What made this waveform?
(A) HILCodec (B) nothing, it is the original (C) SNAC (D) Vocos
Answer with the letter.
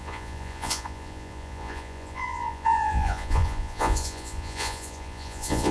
D